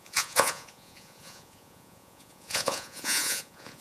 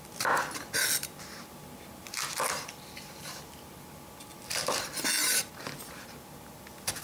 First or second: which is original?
second